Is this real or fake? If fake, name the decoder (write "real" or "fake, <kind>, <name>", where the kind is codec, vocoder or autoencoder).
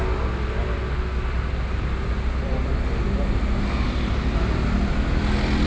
real